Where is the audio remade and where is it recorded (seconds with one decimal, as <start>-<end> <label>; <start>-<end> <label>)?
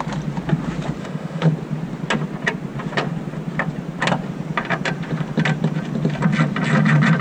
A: 0.0-1.0 recorded; 1.0-1.5 remade; 1.5-7.2 recorded